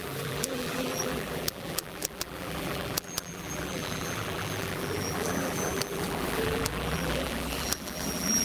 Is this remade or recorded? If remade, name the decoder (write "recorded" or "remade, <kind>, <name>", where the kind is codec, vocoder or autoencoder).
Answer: remade, vocoder, BigVGAN v2